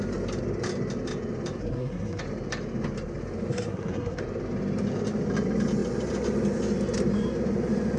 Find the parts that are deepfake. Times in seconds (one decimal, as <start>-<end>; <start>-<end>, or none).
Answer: 1.6-2.2; 3.5-4.2